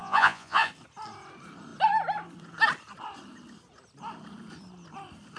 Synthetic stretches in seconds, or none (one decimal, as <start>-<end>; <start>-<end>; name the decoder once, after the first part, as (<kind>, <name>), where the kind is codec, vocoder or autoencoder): 0.0-0.7 (vocoder, Vocos)